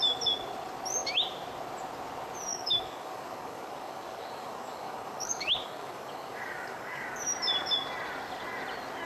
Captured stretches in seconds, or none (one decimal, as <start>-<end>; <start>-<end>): 0.0-2.5; 7.2-9.1